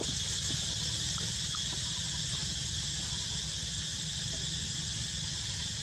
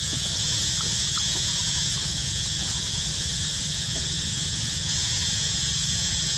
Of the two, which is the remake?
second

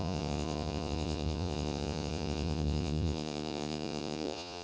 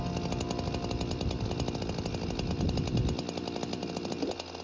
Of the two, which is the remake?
first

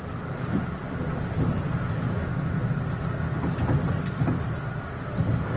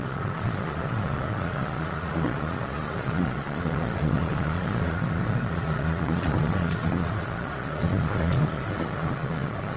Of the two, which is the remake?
second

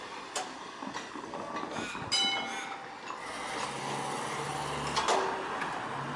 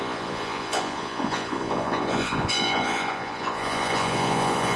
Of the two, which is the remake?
second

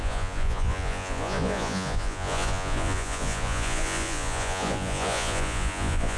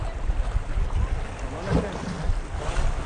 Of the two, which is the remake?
first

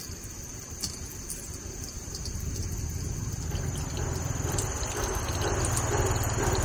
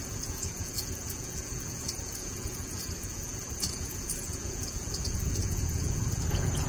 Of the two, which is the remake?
second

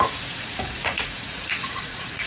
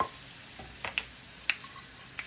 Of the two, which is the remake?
first